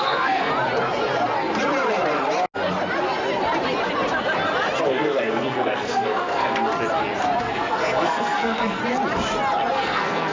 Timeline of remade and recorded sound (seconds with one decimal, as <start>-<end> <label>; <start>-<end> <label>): 0.0-0.5 remade; 0.5-4.8 recorded; 4.8-6.7 remade; 6.7-7.4 recorded; 7.4-8.8 remade; 8.8-9.7 recorded; 9.7-10.3 remade